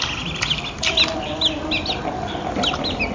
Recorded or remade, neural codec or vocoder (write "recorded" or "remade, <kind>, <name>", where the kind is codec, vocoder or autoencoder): recorded